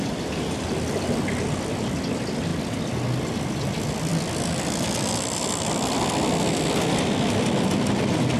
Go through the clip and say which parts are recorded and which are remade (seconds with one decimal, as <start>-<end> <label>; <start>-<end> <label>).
0.0-2.5 remade; 2.5-3.4 recorded; 3.4-8.4 remade